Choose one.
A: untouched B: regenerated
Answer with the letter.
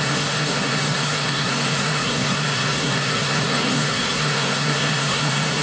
B